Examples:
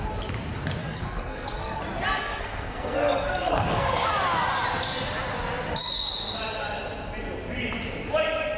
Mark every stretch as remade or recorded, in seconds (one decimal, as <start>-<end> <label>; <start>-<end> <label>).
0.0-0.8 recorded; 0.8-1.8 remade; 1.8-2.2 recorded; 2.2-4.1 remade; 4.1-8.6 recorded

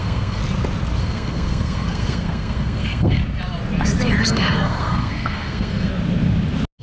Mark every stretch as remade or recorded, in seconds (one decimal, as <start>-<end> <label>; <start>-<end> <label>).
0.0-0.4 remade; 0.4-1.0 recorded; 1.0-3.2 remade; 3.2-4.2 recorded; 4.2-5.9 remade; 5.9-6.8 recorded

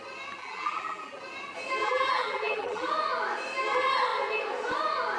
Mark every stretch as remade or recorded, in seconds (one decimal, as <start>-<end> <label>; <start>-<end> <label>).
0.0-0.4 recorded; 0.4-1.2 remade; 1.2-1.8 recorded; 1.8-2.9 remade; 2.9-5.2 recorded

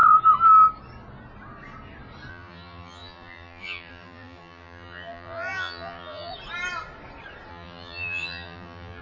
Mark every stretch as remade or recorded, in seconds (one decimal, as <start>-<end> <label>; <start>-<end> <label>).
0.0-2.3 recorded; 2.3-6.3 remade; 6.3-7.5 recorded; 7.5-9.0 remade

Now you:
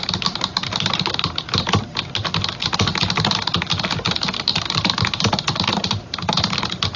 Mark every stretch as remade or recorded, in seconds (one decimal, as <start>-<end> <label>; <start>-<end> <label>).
0.0-4.5 recorded; 4.5-6.6 remade; 6.6-7.0 recorded